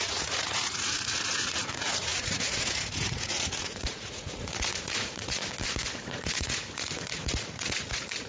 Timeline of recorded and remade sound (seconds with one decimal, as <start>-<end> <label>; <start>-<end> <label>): 0.0-5.4 remade; 5.4-6.1 recorded; 6.1-8.3 remade